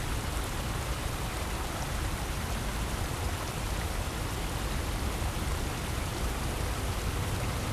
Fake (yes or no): no